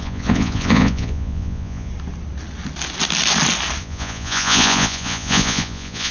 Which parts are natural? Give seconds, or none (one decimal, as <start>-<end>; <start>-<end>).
1.9-3.8